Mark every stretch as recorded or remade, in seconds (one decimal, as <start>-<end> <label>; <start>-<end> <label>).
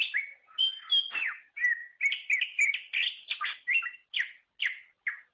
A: 0.0-5.3 recorded